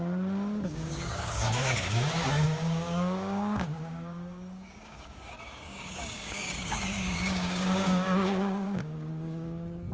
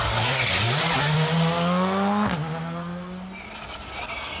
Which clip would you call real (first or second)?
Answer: second